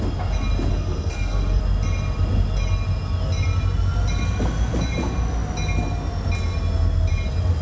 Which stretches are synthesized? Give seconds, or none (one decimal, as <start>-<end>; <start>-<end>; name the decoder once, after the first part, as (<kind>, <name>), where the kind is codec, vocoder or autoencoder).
0.7-1.6 (codec, SNAC)